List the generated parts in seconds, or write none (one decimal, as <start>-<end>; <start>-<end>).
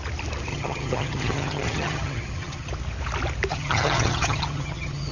0.5-2.7; 3.5-5.1